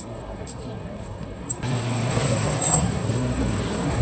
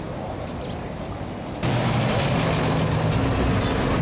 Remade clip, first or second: first